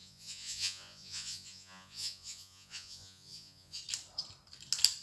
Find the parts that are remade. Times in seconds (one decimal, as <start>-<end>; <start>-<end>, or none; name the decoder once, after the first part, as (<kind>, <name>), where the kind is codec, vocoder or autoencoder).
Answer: 0.0-3.8 (vocoder, Vocos)